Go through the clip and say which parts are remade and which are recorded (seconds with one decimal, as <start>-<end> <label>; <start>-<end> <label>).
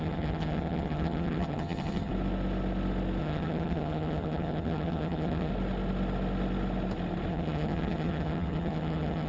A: 0.0-2.1 remade; 2.1-3.2 recorded; 3.2-5.5 remade; 5.5-7.3 recorded; 7.3-9.3 remade